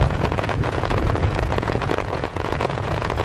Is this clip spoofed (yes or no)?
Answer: yes